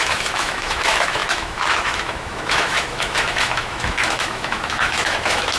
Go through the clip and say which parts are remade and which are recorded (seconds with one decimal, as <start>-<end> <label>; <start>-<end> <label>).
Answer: 0.0-5.6 remade